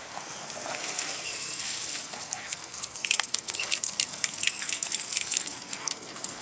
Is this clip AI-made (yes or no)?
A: yes